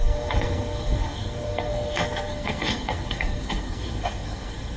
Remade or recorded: remade